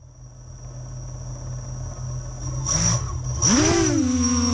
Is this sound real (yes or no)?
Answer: yes